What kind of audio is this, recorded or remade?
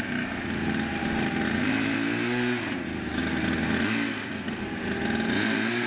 recorded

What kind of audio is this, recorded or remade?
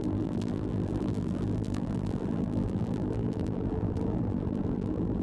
remade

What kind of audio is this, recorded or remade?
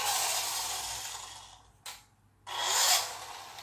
recorded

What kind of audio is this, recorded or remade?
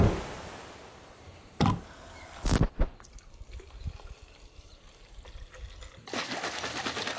recorded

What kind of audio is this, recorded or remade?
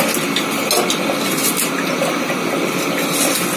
recorded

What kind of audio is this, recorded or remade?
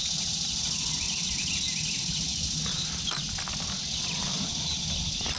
recorded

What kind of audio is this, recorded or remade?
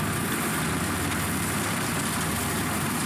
recorded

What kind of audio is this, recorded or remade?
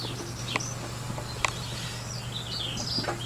recorded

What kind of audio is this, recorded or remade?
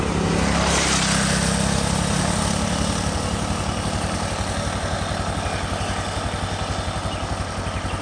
recorded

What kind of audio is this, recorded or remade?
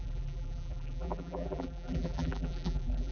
remade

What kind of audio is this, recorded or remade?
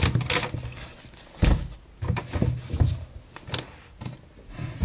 recorded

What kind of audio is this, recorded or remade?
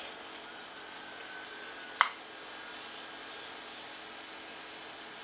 recorded